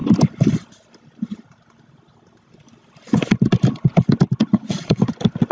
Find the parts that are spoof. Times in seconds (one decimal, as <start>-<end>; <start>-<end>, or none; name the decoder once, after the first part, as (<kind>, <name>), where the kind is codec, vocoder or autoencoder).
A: 4.5-5.0 (vocoder, Vocos)